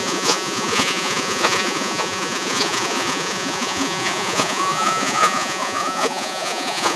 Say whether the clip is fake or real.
fake